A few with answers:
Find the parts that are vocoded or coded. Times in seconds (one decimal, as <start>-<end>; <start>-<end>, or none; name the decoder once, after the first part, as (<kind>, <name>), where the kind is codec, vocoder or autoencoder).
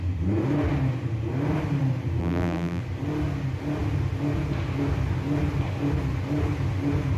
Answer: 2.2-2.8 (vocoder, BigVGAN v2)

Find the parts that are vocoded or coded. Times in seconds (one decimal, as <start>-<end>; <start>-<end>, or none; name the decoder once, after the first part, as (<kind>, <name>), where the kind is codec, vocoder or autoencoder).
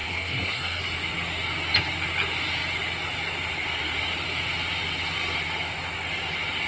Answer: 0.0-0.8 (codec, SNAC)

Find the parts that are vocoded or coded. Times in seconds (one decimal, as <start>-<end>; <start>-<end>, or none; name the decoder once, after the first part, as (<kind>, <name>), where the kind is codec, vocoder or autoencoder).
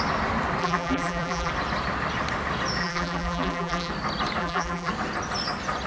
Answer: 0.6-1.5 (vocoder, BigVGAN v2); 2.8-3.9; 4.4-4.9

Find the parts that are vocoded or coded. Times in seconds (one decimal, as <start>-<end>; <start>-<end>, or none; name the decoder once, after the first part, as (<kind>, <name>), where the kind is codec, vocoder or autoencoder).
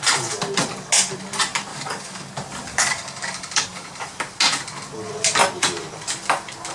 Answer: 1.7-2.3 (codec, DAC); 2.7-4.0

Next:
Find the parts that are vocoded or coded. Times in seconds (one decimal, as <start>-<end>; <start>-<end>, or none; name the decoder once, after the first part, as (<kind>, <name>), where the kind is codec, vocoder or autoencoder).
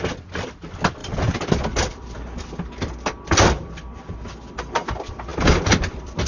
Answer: none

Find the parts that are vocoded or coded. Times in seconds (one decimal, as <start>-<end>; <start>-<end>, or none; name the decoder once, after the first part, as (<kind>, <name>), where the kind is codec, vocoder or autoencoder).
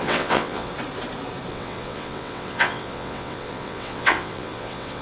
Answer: 0.0-0.7 (vocoder, WaveNeXt); 1.5-5.0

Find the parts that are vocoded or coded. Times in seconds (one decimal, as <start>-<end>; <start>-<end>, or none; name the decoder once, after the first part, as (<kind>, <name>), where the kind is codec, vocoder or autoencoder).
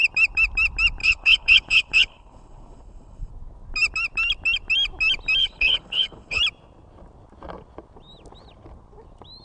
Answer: 1.0-3.3 (codec, HILCodec); 5.4-6.4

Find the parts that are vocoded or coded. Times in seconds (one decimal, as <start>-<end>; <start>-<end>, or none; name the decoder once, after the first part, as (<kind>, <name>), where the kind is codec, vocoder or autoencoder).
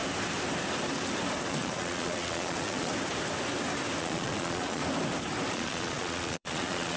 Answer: 1.5-2.9 (vocoder, Vocos); 4.0-4.8; 5.5-7.0